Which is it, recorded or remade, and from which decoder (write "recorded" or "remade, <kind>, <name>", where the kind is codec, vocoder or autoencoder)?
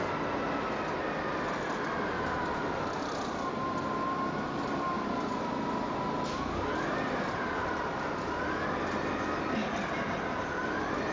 recorded